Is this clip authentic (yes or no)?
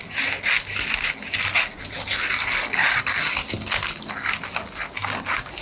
yes